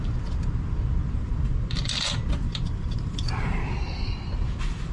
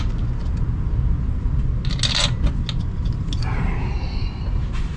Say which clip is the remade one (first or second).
first